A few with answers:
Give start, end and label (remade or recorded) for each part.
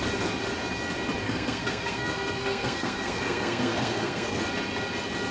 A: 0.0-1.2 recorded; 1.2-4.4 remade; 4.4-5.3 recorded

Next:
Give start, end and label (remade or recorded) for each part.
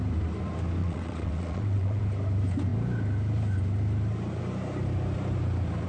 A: 0.0-0.8 recorded; 0.8-2.0 remade; 2.0-5.9 recorded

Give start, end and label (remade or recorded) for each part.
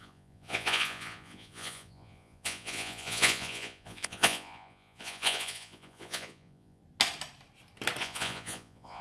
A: 0.0-6.8 remade; 6.8-8.0 recorded; 8.0-9.0 remade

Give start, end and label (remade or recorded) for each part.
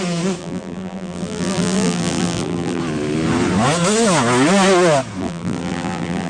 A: 0.0-0.4 recorded; 0.4-2.8 remade; 2.8-5.2 recorded; 5.2-6.3 remade